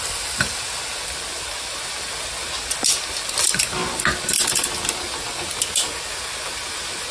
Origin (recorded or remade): recorded